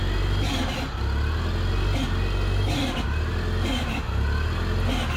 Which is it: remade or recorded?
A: recorded